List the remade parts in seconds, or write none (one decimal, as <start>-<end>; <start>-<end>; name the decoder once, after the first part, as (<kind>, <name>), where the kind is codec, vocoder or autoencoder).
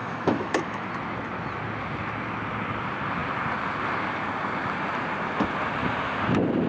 0.0-0.9 (autoencoder, DAC-VAE)